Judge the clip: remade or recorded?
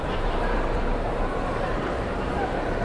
remade